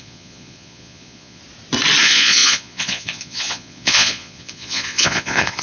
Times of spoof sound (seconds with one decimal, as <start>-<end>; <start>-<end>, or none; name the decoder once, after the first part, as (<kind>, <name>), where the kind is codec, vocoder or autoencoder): 0.0-1.4 (vocoder, Vocos); 2.0-5.6